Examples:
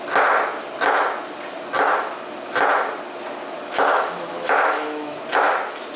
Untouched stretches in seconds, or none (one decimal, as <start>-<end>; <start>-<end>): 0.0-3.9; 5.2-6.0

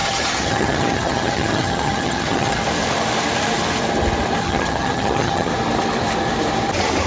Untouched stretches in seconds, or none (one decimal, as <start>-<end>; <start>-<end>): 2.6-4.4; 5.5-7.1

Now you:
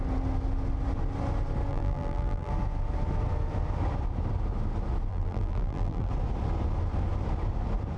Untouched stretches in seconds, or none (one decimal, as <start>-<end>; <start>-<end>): 0.0-1.7; 2.5-5.1; 6.1-8.0